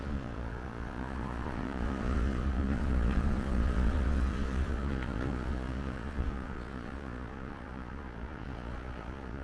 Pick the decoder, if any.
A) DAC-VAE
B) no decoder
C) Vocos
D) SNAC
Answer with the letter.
C